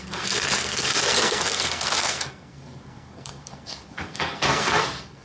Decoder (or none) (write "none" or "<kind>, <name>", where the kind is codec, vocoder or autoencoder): codec, SNAC